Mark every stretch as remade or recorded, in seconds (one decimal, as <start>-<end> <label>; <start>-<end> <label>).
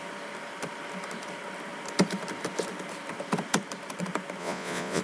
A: 0.0-4.4 recorded; 4.4-5.0 remade